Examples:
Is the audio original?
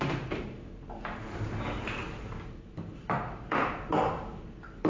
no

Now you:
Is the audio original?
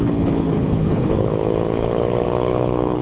no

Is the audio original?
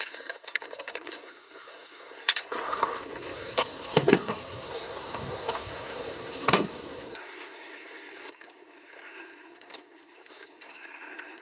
no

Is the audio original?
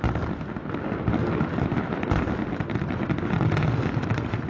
yes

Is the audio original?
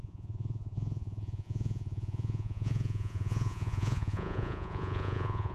no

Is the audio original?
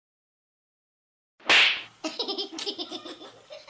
yes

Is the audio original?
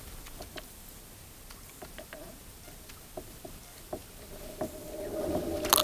yes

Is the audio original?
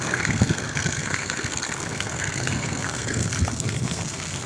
no